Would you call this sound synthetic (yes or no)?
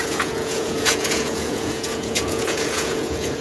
yes